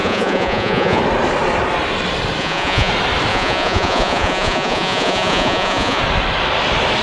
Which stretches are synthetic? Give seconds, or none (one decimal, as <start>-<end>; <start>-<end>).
0.0-1.0; 2.4-2.9; 3.3-6.0